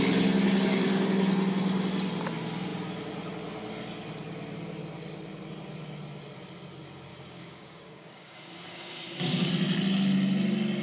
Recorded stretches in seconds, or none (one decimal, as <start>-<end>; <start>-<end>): 0.0-7.1; 9.5-10.8